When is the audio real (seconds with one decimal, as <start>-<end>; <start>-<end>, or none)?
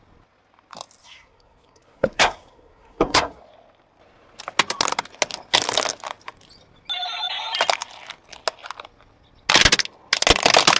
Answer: 0.0-1.0; 3.4-10.8